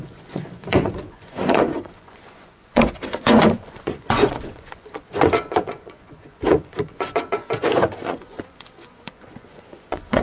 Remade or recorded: remade